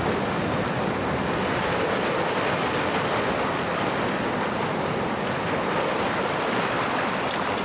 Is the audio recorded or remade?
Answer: recorded